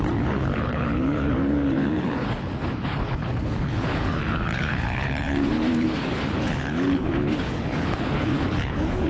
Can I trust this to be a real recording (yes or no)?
no